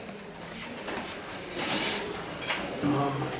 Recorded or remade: recorded